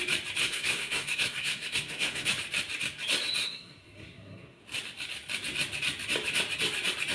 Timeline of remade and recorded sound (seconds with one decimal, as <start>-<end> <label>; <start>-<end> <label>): 0.0-0.4 recorded; 0.4-2.3 remade; 2.3-3.4 recorded; 3.4-4.6 remade; 4.6-7.1 recorded